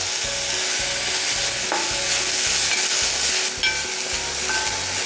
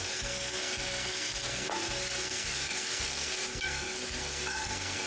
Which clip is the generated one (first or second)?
second